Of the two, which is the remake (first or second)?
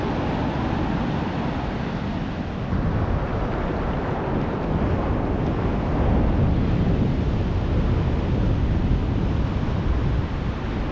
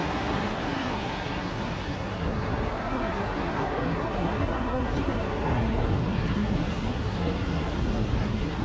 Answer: second